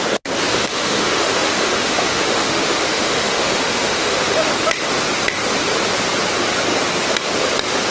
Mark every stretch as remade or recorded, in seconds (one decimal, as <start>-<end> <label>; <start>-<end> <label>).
0.0-0.5 recorded; 0.5-4.5 remade; 4.5-7.9 recorded